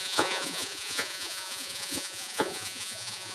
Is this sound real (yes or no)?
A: no